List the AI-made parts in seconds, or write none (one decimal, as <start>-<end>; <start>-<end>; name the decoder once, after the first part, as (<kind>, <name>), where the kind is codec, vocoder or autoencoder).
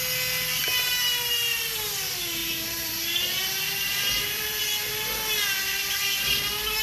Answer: 2.4-4.6 (vocoder, BigVGAN v2)